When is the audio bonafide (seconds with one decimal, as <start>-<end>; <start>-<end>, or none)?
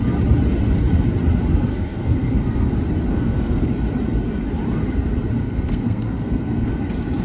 0.0-1.7; 2.7-3.1; 3.7-5.4; 6.8-7.2